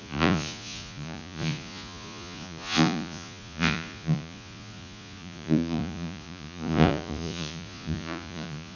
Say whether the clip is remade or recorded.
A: remade